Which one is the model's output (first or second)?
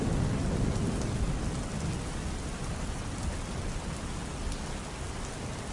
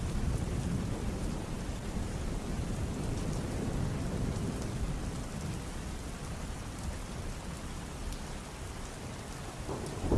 second